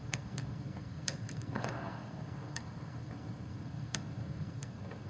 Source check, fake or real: fake